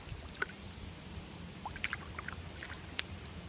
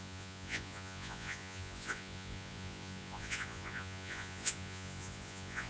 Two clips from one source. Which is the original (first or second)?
first